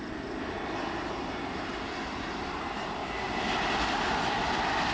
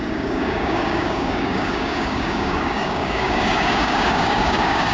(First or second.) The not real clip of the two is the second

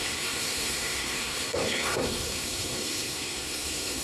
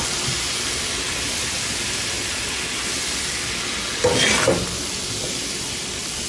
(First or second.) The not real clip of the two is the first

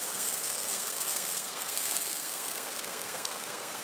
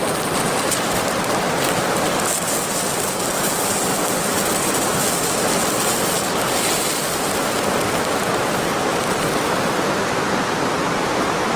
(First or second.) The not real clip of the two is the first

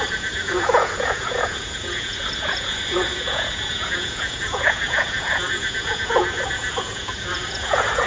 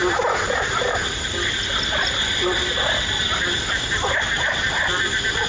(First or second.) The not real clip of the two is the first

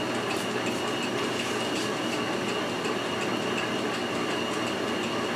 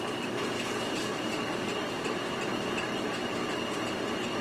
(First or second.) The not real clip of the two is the second